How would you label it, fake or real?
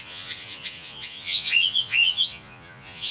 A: fake